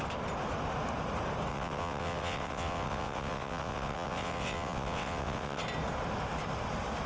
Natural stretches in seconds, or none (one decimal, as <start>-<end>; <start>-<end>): 0.0-1.5; 5.6-7.1